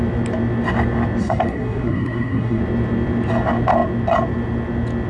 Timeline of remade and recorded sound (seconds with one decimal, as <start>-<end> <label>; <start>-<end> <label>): 0.0-1.2 recorded; 1.2-2.6 remade; 2.6-5.1 recorded